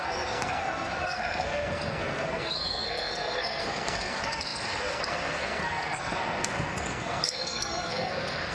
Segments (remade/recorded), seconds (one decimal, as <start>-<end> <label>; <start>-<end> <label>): 0.0-8.5 remade